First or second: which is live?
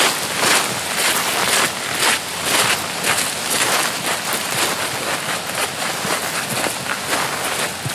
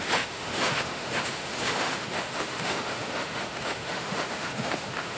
first